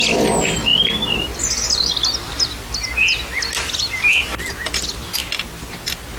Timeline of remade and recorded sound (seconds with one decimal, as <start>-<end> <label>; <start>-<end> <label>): 0.0-6.2 recorded